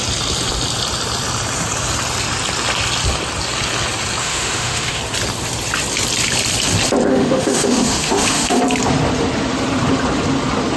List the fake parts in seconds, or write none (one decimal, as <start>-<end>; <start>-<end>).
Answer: 4.2-5.0; 7.1-8.6